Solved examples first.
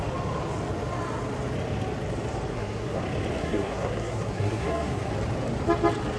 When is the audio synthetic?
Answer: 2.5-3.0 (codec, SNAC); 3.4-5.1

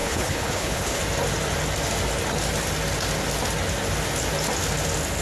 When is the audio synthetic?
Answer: 0.0-1.0 (codec, HILCodec)

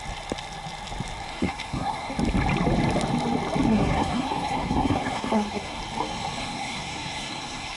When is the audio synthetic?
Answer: 1.3-2.1 (codec, SNAC); 3.7-5.8; 6.4-7.8

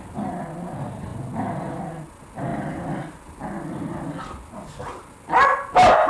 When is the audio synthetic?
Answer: none

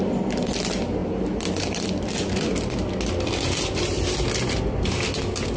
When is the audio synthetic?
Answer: none

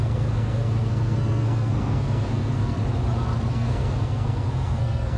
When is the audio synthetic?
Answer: 0.0-2.8 (codec, SNAC); 3.5-5.2

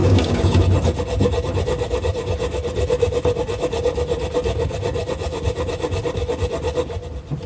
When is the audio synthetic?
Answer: 0.0-0.6 (codec, DAC)

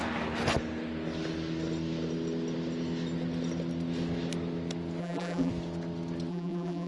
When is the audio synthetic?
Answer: 5.0-5.5 (vocoder, BigVGAN v2); 6.3-6.9